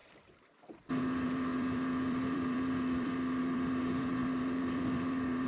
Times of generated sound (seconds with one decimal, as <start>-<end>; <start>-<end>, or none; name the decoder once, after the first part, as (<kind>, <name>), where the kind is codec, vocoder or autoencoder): 1.0-5.5 (vocoder, BigVGAN v2)